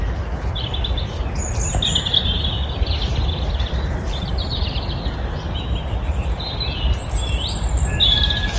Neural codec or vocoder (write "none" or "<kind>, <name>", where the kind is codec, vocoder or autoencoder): none